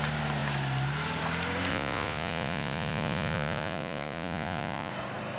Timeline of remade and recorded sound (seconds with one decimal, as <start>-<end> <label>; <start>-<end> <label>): 0.0-1.7 recorded; 1.7-4.9 remade; 4.9-5.4 recorded